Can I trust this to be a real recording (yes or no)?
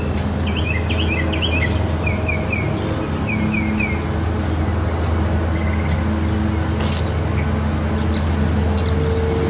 yes